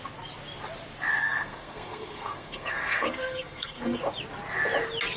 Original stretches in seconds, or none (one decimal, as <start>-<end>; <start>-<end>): 0.0-1.2; 4.0-5.2